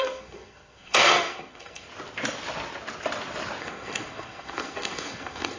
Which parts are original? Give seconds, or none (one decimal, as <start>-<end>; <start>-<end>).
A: 1.9-3.6